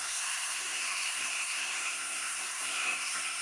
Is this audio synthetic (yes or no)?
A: yes